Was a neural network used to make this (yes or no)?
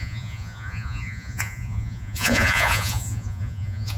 yes